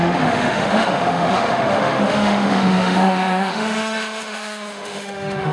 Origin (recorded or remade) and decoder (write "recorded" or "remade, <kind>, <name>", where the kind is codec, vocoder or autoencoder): remade, autoencoder, DAC-VAE